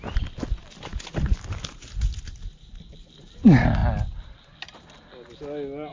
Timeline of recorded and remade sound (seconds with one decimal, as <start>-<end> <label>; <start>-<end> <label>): 0.0-5.9 recorded